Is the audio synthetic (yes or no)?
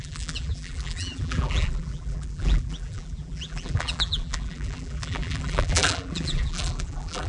yes